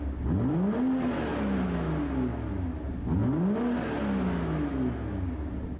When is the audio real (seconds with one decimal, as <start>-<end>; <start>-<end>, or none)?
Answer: 0.0-5.8